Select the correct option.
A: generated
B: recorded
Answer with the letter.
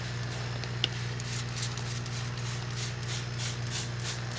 B